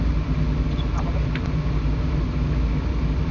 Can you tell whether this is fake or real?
real